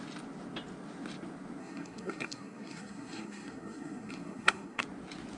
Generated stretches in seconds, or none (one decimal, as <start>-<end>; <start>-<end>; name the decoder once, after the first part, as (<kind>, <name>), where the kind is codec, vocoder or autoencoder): 1.6-4.8 (codec, SNAC)

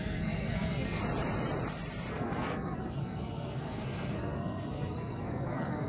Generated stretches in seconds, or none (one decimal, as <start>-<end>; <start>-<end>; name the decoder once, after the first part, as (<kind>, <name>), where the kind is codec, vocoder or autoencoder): 0.0-1.0 (codec, SNAC); 2.1-5.9

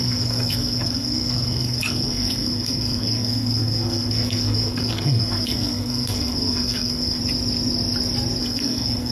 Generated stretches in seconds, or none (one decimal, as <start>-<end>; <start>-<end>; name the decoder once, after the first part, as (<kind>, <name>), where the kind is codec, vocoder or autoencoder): 0.0-7.2 (codec, SNAC); 8.4-9.1

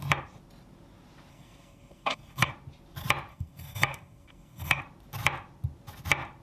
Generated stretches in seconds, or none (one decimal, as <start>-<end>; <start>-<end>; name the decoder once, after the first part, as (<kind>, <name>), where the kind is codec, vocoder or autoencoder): 1.3-2.5 (codec, SNAC); 3.3-4.8

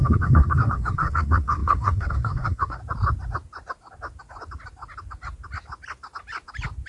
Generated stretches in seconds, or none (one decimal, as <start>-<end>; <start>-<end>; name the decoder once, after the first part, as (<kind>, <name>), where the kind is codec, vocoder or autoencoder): 0.0-2.8 (codec, SNAC)

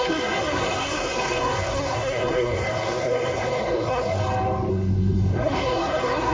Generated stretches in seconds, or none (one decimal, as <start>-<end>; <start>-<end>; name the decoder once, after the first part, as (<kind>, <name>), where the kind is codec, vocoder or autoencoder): 0.0-4.2 (codec, SNAC); 4.7-6.3